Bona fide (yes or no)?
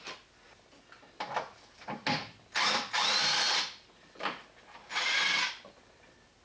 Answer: yes